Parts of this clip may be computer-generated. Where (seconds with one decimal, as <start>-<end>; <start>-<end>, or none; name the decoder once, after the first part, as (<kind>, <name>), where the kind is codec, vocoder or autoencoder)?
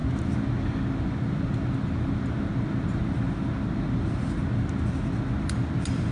none